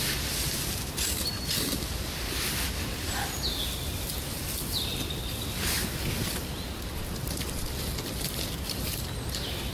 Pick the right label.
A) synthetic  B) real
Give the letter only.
B